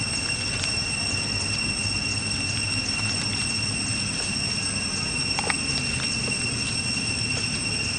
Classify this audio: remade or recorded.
recorded